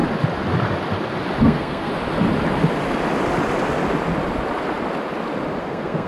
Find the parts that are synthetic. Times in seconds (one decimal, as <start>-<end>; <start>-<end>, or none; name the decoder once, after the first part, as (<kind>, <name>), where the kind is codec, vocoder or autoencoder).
1.4-1.9 (codec, SNAC); 5.6-6.1